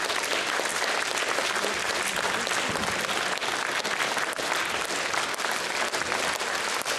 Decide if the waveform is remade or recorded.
recorded